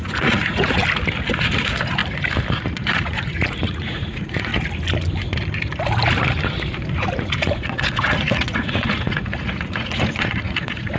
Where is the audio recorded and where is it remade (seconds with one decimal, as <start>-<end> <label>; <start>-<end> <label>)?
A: 0.0-0.8 remade; 0.8-1.3 recorded; 1.3-2.0 remade; 2.0-2.6 recorded; 2.6-4.5 remade; 4.5-6.9 recorded; 6.9-11.0 remade